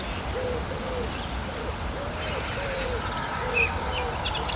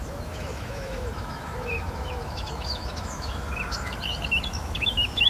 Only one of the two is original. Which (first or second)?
first